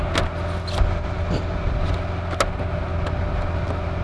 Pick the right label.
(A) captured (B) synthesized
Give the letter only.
A